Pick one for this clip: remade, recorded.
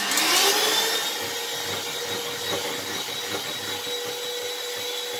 recorded